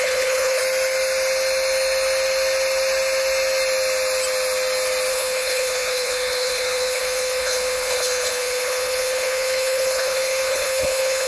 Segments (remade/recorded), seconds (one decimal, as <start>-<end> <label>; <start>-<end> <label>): 0.0-0.6 remade; 0.6-5.1 recorded; 5.1-11.3 remade